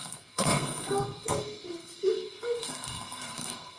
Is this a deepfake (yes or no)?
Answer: yes